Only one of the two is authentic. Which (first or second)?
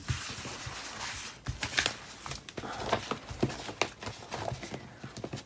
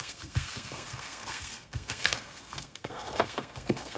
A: first